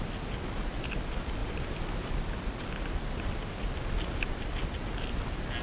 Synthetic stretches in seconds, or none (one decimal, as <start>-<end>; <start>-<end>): 1.4-2.1